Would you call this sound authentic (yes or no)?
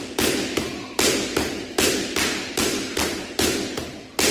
yes